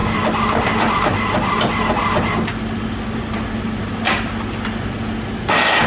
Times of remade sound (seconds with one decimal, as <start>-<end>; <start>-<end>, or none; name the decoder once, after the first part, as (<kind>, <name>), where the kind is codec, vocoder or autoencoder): none